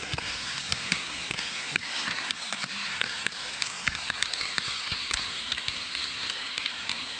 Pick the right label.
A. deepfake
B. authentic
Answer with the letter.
A